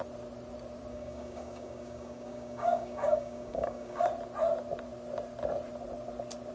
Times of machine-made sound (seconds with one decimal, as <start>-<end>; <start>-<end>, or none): 0.9-4.0

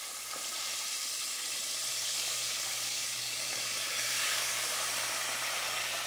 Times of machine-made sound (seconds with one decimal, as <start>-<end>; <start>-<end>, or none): 1.9-4.8